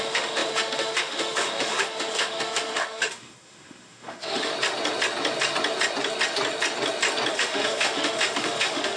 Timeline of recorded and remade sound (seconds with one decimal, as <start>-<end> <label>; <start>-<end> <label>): 0.0-4.5 remade; 4.5-7.3 recorded; 7.3-9.0 remade